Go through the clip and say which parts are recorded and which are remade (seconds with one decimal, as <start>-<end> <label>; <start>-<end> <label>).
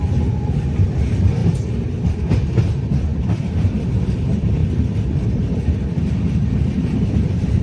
0.0-4.6 remade; 4.6-6.0 recorded; 6.0-7.6 remade